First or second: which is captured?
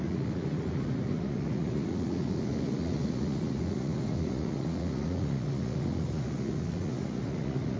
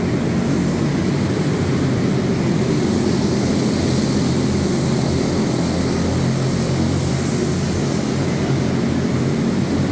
second